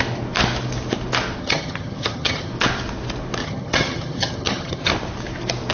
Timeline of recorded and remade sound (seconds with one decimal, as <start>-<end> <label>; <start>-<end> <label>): 0.0-1.4 recorded; 1.4-2.5 remade; 2.5-3.4 recorded; 3.4-4.9 remade; 4.9-5.7 recorded